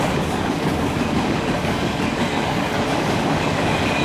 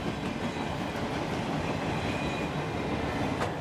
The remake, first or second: first